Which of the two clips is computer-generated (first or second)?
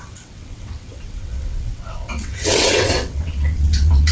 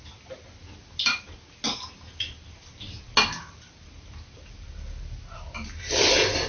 first